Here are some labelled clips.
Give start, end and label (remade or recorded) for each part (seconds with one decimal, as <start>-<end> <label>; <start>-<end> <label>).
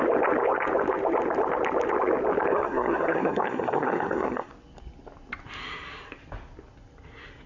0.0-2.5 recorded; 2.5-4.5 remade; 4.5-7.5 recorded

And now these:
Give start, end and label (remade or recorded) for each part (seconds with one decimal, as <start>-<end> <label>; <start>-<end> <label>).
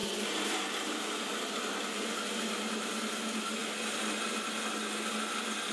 0.0-2.9 remade; 2.9-5.7 recorded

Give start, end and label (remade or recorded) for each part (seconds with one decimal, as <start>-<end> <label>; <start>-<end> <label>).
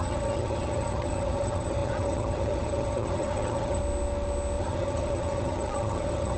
0.0-3.8 remade; 3.8-4.6 recorded; 4.6-6.4 remade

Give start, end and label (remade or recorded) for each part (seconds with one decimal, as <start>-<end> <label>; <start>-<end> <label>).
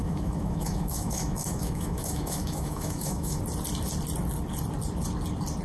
0.0-3.4 remade; 3.4-5.6 recorded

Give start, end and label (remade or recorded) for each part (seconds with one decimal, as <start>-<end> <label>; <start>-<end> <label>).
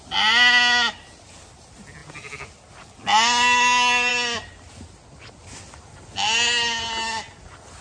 0.0-7.8 recorded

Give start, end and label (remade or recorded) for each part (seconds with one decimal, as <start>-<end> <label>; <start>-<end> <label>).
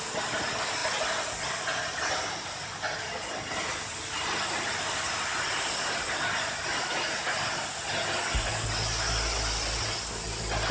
0.0-10.7 recorded